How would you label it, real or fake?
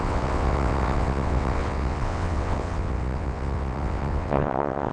fake